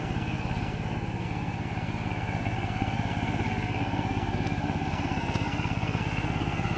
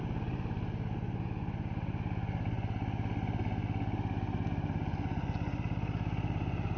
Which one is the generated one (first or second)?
first